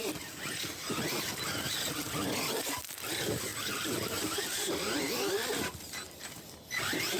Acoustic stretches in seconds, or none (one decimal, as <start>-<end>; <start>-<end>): 0.0-7.2